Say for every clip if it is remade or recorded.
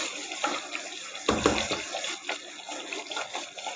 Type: recorded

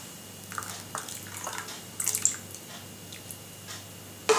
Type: recorded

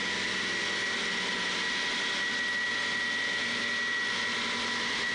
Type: recorded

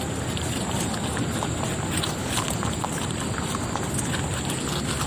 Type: recorded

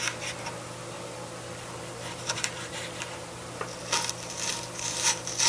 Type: remade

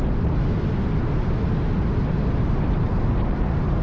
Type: recorded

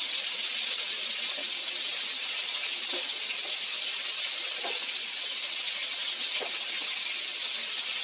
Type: recorded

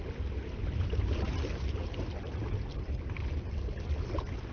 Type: recorded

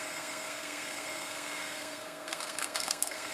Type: remade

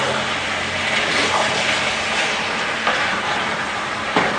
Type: recorded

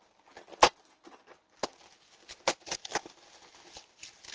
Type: recorded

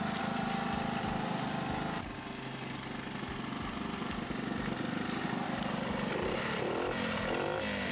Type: recorded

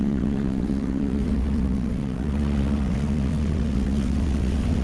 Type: remade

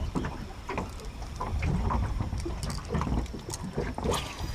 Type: recorded